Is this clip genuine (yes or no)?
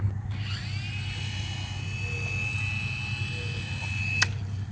yes